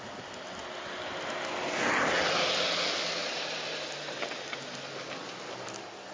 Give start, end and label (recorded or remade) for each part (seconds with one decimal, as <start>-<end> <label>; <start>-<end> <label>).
0.0-3.2 recorded; 3.2-4.9 remade; 4.9-6.1 recorded